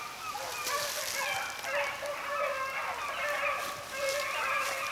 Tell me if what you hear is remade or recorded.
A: recorded